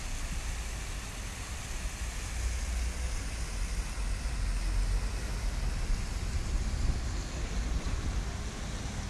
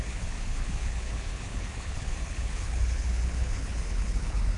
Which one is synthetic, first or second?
second